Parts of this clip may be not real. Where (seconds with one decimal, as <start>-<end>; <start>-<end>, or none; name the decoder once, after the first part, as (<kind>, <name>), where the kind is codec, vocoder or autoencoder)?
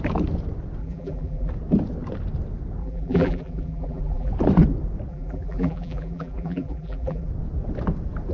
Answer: 0.8-1.5 (vocoder, BigVGAN v2); 2.8-4.3; 5.1-7.3